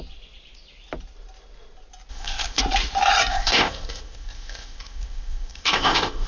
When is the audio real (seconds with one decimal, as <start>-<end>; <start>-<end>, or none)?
0.0-2.1; 2.6-3.3